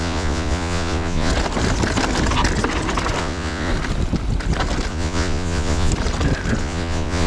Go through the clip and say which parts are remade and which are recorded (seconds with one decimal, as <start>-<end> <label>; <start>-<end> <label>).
0.0-1.3 remade; 1.3-3.2 recorded; 3.2-3.7 remade; 3.7-4.9 recorded; 4.9-5.9 remade; 5.9-6.6 recorded; 6.6-7.3 remade